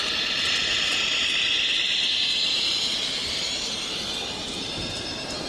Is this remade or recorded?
remade